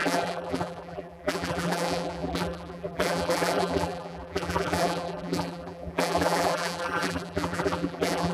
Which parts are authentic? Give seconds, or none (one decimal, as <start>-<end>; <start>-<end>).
none